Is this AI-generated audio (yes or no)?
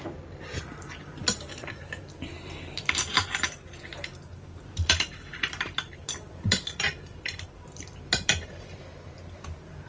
yes